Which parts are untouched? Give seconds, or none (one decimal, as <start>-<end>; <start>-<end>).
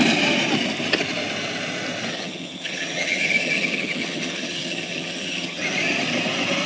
0.0-2.1; 5.6-6.7